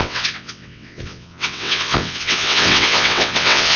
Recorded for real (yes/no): no